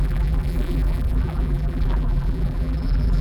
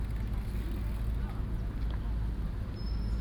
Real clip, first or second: second